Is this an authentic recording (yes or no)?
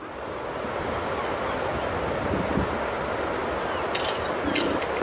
yes